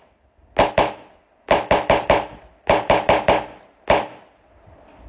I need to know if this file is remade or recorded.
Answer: recorded